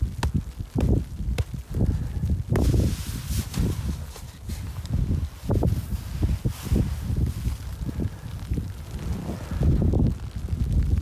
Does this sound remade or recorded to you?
recorded